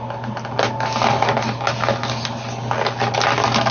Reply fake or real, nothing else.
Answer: real